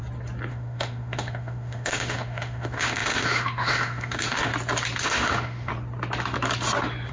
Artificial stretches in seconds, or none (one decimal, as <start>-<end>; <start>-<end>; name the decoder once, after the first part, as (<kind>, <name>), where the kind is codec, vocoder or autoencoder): 0.5-4.5 (autoencoder, DAC-VAE); 5.0-5.7

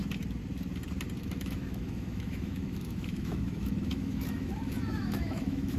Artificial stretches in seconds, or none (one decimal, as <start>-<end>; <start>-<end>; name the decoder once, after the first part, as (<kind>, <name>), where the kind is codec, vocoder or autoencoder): 1.2-5.8 (autoencoder, DAC-VAE)

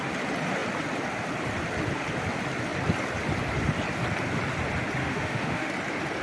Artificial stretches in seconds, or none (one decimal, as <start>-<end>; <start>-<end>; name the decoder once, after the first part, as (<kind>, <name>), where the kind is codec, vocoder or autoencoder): 5.0-5.7 (autoencoder, DAC-VAE)